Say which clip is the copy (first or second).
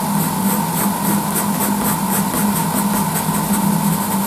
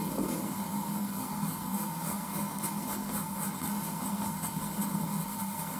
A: second